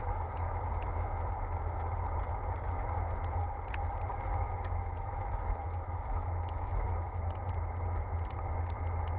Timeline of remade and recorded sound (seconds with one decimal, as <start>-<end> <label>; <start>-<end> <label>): 0.0-1.3 remade; 1.3-4.1 recorded; 4.1-7.4 remade; 7.4-9.2 recorded